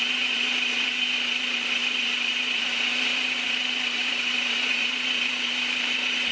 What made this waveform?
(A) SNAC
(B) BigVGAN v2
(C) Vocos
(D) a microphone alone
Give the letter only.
B